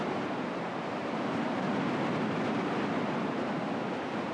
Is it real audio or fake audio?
real